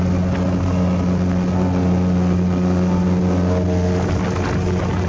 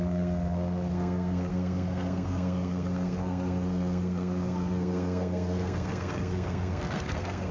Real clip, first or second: first